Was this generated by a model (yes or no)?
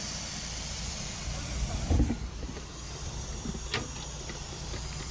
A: yes